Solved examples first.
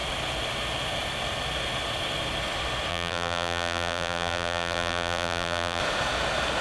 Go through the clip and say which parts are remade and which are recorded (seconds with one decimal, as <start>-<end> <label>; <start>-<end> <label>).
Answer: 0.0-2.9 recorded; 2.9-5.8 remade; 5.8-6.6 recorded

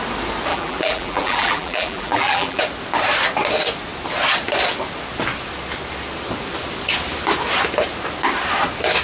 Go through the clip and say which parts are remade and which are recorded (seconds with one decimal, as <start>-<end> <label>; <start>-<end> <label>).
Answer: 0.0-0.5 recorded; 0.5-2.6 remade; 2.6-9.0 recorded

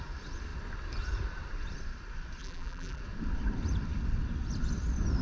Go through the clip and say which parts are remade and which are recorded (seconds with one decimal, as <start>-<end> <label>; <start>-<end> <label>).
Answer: 0.0-2.4 recorded; 2.4-3.0 remade; 3.0-5.2 recorded

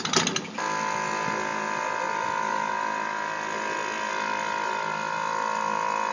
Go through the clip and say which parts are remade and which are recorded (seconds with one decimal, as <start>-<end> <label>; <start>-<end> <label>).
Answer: 0.0-6.1 recorded

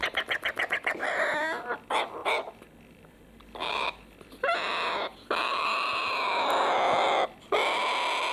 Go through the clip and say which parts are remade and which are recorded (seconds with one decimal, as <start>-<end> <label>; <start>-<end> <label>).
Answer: 0.0-2.2 recorded; 2.2-6.5 remade; 6.5-8.3 recorded